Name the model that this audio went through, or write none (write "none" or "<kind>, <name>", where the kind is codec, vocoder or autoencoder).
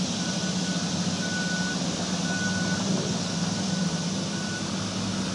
none